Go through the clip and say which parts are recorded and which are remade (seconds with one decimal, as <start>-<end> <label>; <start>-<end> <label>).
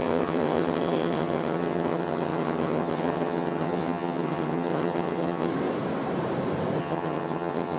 0.0-5.5 remade; 5.5-6.8 recorded; 6.8-7.8 remade